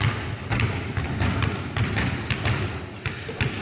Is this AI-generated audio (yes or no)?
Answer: no